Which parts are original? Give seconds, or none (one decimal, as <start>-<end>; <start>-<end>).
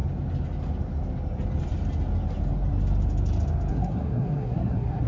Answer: 0.0-3.7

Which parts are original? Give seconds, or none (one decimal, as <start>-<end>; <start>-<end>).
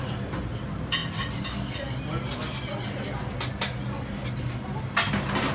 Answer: 0.0-5.5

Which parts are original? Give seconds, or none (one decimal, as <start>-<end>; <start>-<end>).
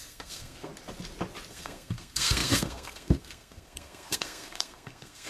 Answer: 0.7-1.5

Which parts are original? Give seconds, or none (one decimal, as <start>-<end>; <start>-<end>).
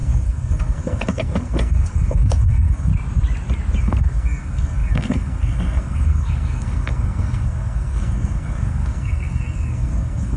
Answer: 2.9-3.8